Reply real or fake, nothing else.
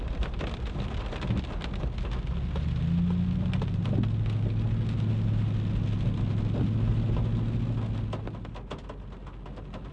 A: real